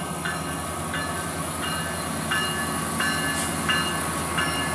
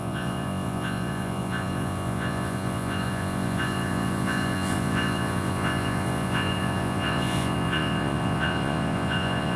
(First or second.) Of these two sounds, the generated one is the second